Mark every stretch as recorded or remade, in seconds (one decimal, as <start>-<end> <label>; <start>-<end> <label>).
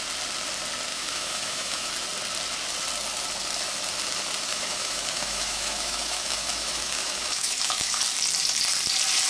0.0-0.9 recorded; 0.9-1.9 remade; 1.9-4.5 recorded; 4.5-8.0 remade; 8.0-9.3 recorded